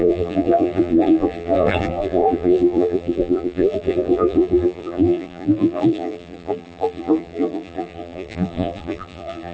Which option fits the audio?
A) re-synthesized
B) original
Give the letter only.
A